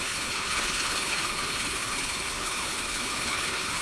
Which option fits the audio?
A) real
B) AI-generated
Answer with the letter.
B